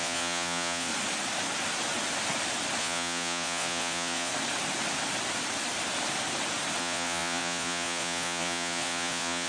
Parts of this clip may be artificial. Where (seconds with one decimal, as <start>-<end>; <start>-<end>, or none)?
0.0-0.9; 2.8-4.3; 6.8-9.5